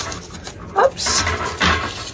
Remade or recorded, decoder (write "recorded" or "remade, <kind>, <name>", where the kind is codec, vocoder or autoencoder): recorded